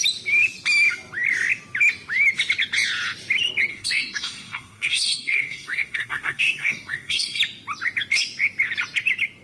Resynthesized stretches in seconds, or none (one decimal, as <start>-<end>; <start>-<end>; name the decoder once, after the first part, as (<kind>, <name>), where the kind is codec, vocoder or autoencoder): 3.7-7.4 (codec, SNAC)

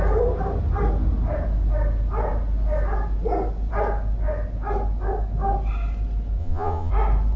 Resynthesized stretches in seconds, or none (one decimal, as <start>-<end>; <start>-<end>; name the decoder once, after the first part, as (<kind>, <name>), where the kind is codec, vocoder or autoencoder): 6.4-6.9 (vocoder, Vocos)

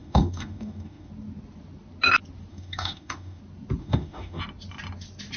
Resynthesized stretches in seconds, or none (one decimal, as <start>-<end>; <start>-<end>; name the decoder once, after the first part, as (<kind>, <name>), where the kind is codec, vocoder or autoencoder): 0.0-1.1 (autoencoder, DAC-VAE); 2.5-3.4; 3.8-4.4

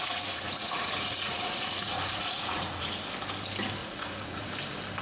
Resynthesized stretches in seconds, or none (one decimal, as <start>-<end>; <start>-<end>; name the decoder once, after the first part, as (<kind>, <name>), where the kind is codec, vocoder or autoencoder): 0.0-3.0 (vocoder, Vocos); 3.8-4.5

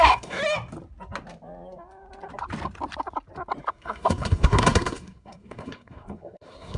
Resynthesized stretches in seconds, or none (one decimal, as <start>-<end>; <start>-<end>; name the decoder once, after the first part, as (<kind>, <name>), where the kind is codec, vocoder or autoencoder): 0.0-0.4 (codec, SNAC); 3.7-6.8

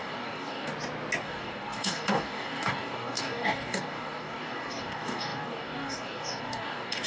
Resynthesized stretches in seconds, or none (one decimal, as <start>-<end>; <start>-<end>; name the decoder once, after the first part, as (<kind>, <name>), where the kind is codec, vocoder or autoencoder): 0.0-0.7 (codec, DAC); 1.2-7.1

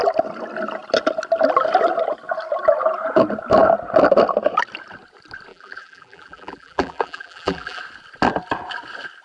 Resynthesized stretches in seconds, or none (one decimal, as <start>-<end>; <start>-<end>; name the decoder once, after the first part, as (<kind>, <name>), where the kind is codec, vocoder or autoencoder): 5.5-7.8 (vocoder, BigVGAN v2)